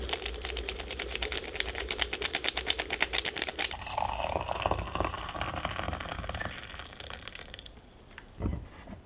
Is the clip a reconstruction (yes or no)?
yes